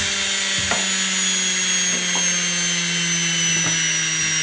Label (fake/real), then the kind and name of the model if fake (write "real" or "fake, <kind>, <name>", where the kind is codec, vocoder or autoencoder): real